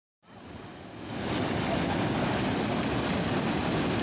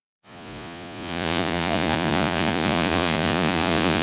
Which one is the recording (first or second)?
first